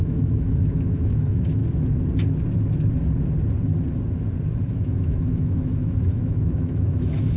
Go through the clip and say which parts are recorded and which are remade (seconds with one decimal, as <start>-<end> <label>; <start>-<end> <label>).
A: 0.0-1.6 remade; 1.6-4.6 recorded; 4.6-7.4 remade